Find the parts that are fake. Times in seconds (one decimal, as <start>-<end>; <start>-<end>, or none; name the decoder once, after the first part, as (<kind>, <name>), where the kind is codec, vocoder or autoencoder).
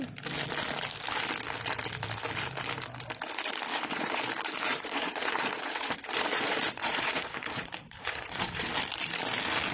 3.7-4.2 (vocoder, Vocos); 4.7-8.7